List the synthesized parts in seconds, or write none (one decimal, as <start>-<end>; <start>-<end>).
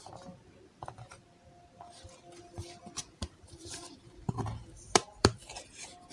3.0-5.4